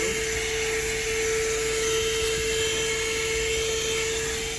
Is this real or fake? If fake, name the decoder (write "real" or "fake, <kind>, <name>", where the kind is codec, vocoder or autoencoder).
real